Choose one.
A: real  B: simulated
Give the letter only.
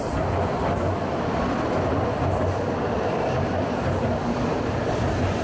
A